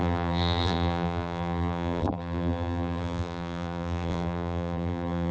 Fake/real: fake